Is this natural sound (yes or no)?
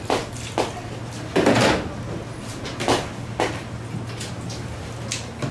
yes